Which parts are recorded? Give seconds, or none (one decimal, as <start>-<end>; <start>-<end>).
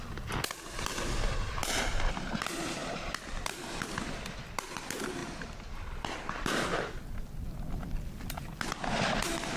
0.0-9.6